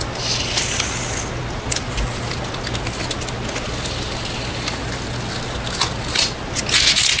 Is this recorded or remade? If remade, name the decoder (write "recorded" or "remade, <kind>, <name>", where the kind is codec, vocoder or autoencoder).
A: recorded